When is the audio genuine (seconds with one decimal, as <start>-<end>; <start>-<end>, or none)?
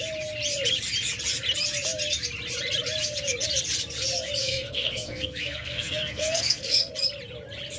0.0-4.4; 6.9-7.8